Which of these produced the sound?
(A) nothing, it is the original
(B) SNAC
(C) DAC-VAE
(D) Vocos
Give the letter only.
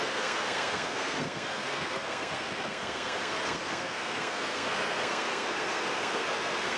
B